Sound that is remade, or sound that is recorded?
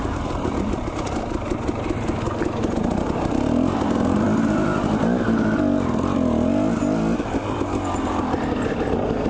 recorded